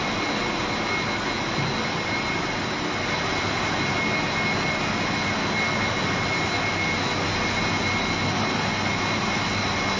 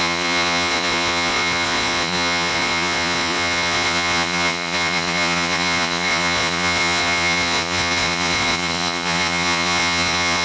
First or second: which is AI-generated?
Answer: second